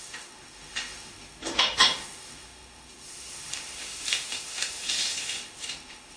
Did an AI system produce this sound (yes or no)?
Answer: yes